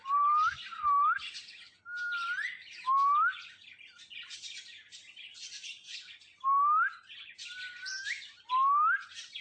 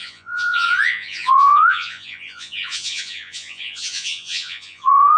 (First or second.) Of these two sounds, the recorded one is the first